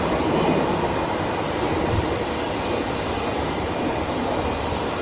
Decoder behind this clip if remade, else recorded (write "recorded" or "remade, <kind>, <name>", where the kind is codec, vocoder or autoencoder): remade, vocoder, BigVGAN v2